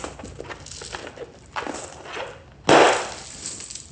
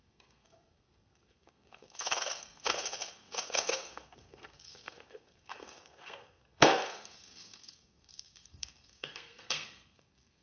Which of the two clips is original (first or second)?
first